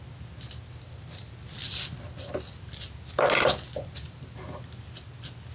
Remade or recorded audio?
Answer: recorded